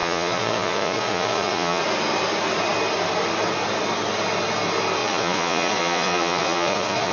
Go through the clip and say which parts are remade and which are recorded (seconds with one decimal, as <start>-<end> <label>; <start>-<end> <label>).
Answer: 0.0-1.8 remade; 1.8-5.0 recorded; 5.0-7.1 remade